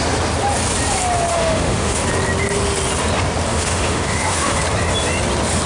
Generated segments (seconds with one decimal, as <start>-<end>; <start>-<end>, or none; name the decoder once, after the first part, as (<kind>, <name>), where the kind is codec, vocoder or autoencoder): 1.3-2.0 (autoencoder, DAC-VAE); 3.5-4.6